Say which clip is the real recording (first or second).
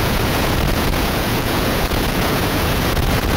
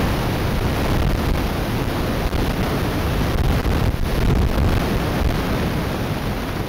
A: second